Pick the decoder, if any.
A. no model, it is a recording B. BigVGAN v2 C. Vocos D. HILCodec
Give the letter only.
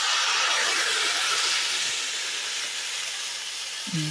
A